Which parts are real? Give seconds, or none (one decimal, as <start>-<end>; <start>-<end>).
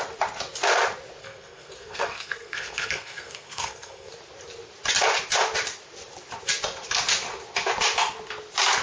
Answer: 0.0-1.2; 4.1-8.8